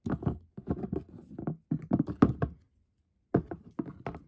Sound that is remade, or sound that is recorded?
recorded